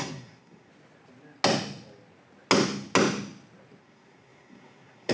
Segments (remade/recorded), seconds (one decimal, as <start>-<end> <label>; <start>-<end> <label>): 0.0-0.7 remade; 0.7-3.8 recorded; 3.8-5.1 remade